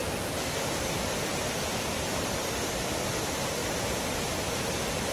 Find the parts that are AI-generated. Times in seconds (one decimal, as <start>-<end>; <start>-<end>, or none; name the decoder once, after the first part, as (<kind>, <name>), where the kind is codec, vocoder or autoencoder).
0.0-3.6 (vocoder, BigVGAN v2)